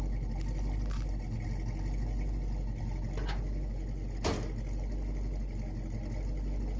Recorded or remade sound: recorded